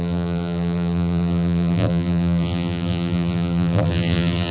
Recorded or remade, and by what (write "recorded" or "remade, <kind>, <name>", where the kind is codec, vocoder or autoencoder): remade, vocoder, BigVGAN v2